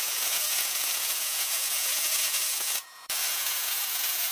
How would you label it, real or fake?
fake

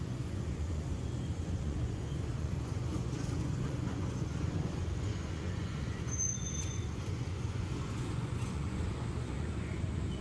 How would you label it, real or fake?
fake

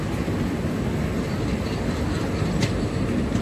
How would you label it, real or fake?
real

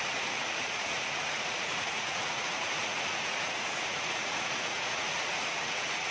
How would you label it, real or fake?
fake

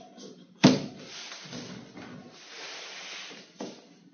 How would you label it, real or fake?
real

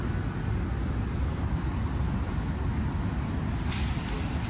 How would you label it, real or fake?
real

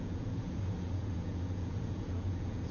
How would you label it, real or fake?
fake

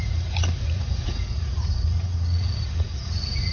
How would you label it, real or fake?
fake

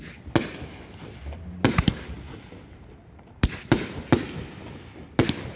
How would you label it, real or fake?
real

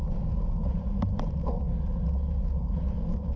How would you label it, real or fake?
real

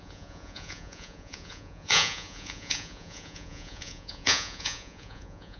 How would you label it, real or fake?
fake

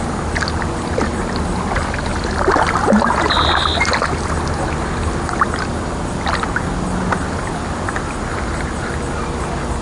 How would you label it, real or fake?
real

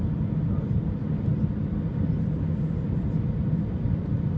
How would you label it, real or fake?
real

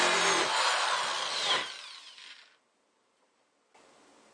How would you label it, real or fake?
real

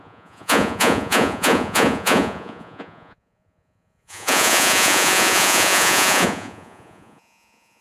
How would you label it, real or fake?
fake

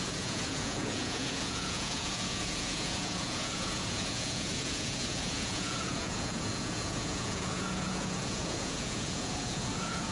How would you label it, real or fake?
fake